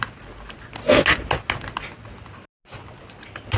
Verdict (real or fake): real